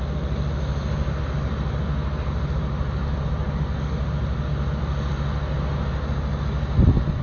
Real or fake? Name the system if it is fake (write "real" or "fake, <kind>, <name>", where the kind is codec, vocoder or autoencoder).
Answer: real